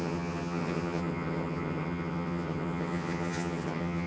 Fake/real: fake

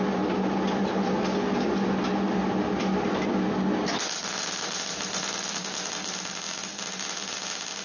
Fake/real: real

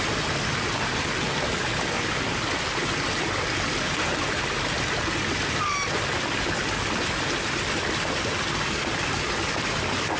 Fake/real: real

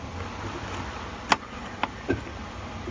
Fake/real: real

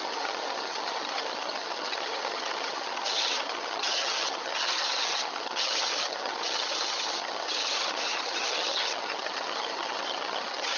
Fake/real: fake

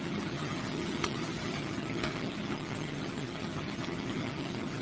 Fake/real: fake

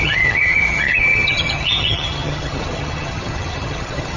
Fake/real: fake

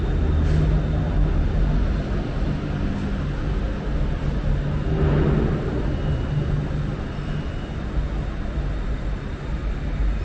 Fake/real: real